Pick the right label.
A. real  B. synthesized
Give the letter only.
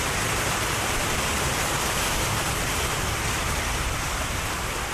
A